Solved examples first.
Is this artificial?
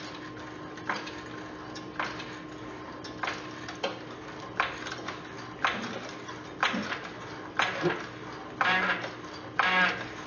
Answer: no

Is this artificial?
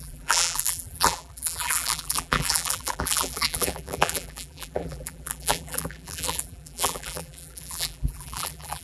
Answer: yes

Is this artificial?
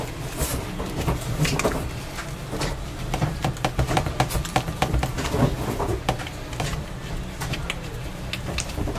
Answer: yes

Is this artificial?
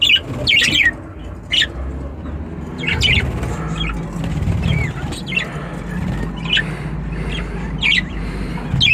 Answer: no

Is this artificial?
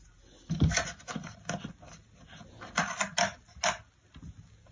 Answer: no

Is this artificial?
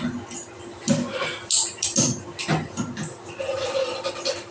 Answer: no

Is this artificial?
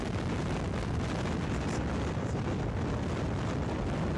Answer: no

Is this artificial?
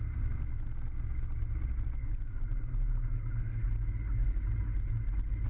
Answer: no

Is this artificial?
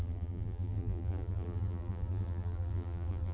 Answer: yes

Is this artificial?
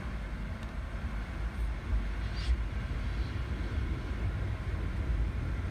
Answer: no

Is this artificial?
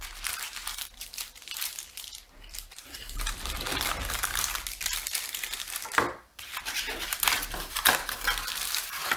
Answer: yes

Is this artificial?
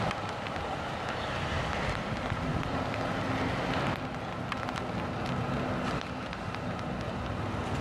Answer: no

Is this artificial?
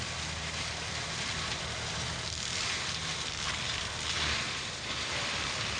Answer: yes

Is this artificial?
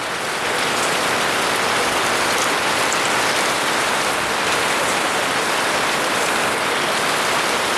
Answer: yes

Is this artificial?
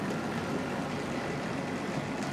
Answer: no